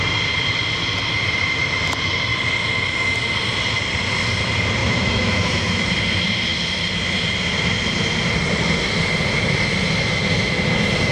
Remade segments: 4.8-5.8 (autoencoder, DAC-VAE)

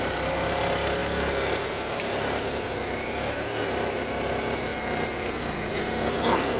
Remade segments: none

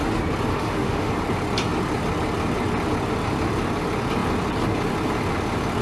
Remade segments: 0.5-1.1 (autoencoder, DAC-VAE)

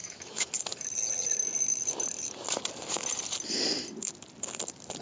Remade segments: 0.0-0.5 (autoencoder, DAC-VAE)

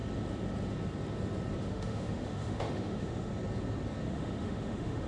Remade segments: 1.6-3.3 (autoencoder, DAC-VAE); 4.0-5.1

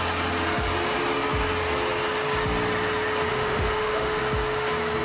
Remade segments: 3.3-4.2 (autoencoder, DAC-VAE)

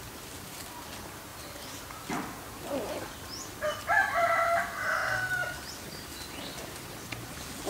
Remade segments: none